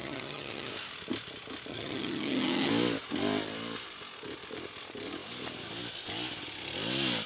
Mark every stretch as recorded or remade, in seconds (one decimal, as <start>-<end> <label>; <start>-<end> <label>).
0.0-0.7 remade; 0.7-1.7 recorded; 1.7-2.7 remade; 2.7-7.3 recorded